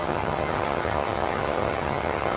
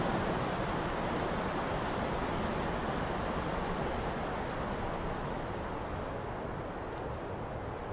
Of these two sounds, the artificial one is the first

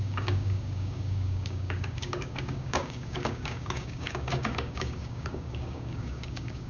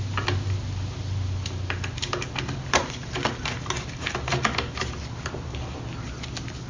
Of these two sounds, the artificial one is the first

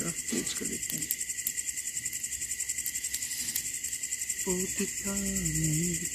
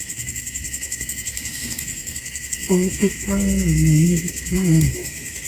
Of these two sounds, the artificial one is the second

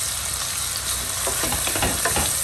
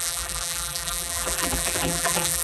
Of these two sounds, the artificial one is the second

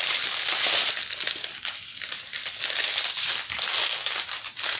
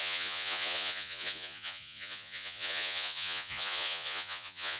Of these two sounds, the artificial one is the second